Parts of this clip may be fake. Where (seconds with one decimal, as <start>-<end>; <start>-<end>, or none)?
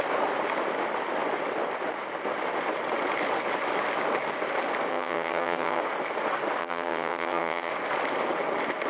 4.9-5.8; 6.6-7.7